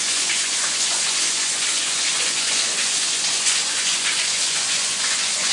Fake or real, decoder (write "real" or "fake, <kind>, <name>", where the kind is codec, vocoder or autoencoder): fake, vocoder, Vocos